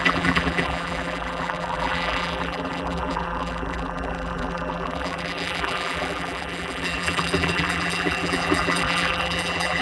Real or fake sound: fake